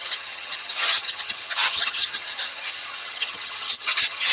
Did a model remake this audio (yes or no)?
yes